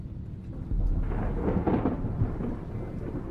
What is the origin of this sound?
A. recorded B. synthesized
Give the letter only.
A